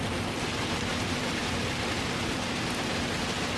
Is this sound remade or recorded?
recorded